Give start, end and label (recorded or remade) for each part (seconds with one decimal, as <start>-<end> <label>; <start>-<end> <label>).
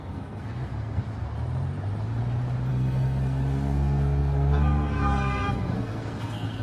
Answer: 0.0-1.0 remade; 1.0-2.7 recorded; 2.7-6.6 remade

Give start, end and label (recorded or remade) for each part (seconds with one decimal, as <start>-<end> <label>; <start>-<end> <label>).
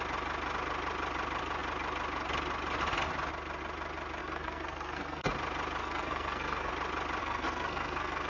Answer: 0.0-4.2 recorded; 4.2-5.3 remade; 5.3-5.8 recorded; 5.8-6.7 remade; 6.7-7.2 recorded; 7.2-8.3 remade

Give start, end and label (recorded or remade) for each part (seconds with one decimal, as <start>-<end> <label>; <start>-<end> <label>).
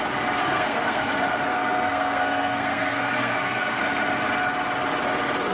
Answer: 0.0-0.4 recorded; 0.4-1.1 remade; 1.1-1.5 recorded; 1.5-3.8 remade; 3.8-5.5 recorded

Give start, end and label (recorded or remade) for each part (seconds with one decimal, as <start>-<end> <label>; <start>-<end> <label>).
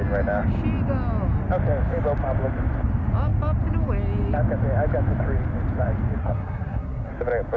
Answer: 0.0-6.2 recorded; 6.2-7.1 remade; 7.1-7.6 recorded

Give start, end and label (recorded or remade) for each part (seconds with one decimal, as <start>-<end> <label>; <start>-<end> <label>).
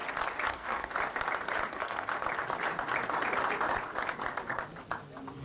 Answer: 0.0-0.5 recorded; 0.5-0.9 remade; 0.9-1.7 recorded; 1.7-2.1 remade; 2.1-5.4 recorded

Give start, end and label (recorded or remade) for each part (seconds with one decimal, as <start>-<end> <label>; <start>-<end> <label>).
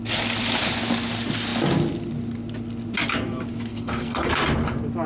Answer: 0.0-3.7 recorded; 3.7-4.3 remade; 4.3-5.1 recorded